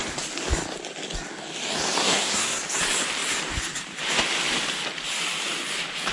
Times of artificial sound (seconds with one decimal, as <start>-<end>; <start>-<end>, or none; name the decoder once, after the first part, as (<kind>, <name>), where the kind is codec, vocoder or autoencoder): 2.0-2.6 (codec, SNAC)